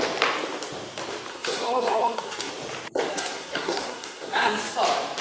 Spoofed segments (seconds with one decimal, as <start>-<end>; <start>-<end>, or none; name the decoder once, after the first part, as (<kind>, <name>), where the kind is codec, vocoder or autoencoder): 1.3-2.5 (codec, SNAC); 3.1-4.6

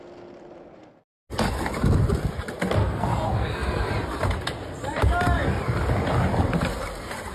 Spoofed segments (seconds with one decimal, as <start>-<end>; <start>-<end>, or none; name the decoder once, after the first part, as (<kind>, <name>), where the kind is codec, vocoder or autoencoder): 2.8-3.9 (codec, SNAC)

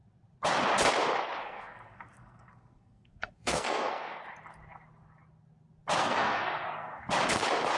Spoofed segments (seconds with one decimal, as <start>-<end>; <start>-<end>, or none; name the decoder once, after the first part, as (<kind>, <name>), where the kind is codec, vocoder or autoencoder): 1.4-4.2 (codec, SNAC); 6.0-7.0

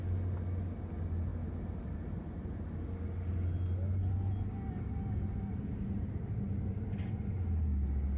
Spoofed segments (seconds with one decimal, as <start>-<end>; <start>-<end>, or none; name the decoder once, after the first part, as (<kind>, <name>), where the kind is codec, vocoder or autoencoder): none

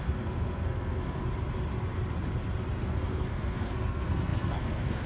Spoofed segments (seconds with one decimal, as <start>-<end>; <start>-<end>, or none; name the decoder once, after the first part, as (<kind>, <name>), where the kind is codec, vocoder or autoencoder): 0.0-1.2 (codec, SNAC); 2.8-5.1

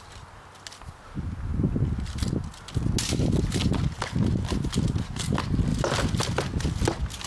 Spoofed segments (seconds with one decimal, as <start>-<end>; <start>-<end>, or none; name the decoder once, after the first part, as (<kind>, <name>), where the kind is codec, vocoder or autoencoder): none